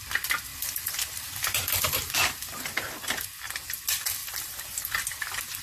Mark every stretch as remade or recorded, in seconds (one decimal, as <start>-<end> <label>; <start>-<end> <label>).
0.0-0.5 recorded; 0.5-3.4 remade; 3.4-4.2 recorded; 4.2-4.8 remade; 4.8-5.6 recorded